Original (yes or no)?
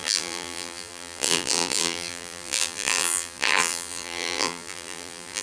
no